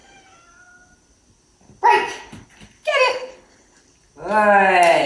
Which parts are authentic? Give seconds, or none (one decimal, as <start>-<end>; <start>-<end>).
0.0-3.1; 3.5-5.1